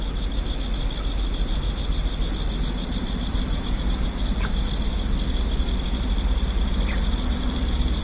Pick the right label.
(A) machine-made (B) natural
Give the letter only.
B